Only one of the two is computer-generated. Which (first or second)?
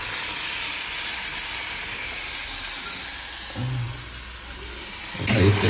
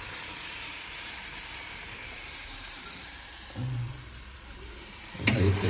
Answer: second